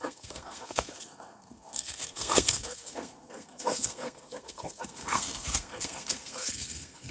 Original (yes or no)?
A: no